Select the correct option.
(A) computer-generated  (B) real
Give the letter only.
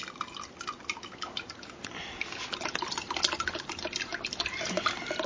B